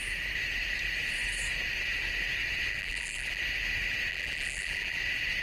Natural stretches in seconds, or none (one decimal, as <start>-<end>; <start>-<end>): 0.0-2.7; 3.4-4.1; 5.0-5.4